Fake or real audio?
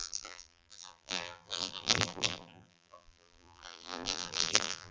fake